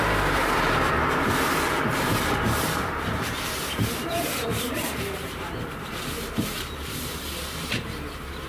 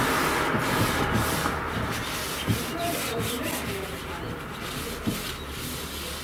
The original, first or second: second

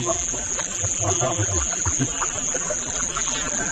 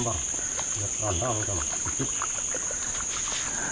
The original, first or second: second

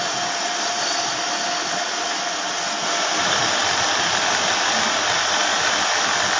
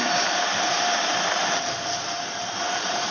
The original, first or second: first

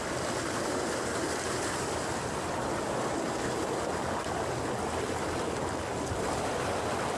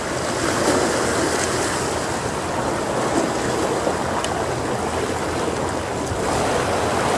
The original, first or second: second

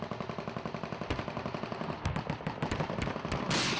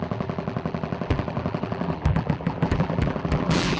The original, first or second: first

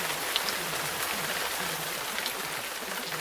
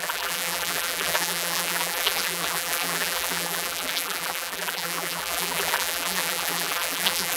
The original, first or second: first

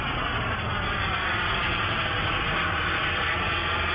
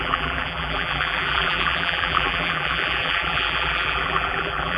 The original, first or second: first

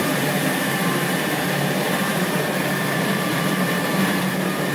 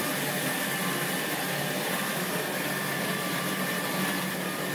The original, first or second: second